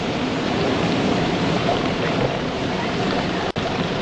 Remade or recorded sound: remade